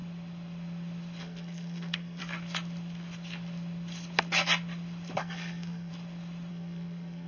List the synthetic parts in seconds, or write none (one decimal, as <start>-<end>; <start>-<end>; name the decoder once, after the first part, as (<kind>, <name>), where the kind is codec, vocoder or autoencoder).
1.2-2.2 (codec, SNAC); 5.2-5.9; 6.5-7.3